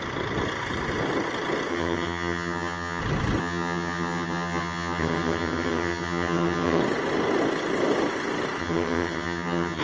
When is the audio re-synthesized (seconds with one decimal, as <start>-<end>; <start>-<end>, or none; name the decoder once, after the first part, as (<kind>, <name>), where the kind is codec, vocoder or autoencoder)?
1.7-3.0 (vocoder, HiFi-GAN); 3.4-6.8; 8.6-9.8